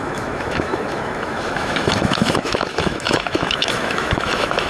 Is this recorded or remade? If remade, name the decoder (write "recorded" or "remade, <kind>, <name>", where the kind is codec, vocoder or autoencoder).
remade, autoencoder, DAC-VAE